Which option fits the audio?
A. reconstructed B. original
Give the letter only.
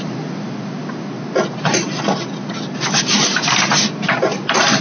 B